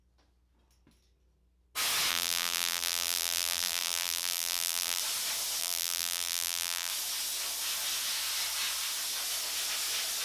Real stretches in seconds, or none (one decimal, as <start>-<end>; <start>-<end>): 0.0-2.1; 5.0-5.6; 6.9-10.2